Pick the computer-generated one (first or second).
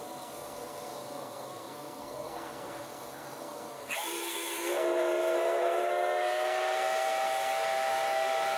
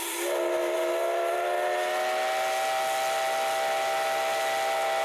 first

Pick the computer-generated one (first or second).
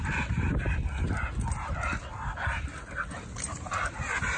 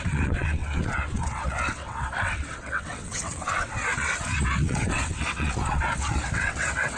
second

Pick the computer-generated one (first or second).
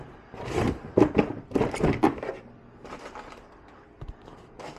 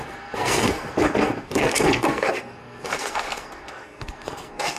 second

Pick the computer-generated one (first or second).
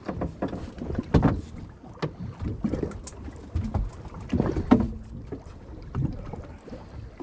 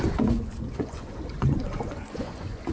second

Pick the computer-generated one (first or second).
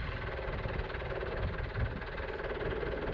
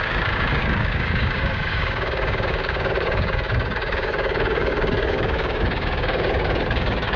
second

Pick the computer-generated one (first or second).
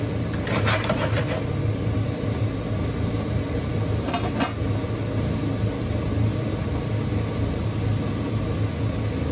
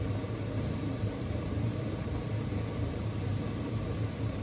second